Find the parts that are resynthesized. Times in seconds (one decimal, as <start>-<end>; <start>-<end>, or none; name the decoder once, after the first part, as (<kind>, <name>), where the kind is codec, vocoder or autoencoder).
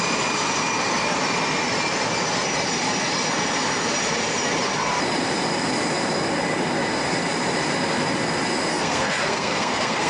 8.7-10.1 (codec, SNAC)